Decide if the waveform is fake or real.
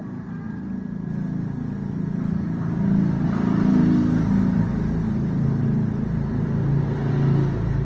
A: real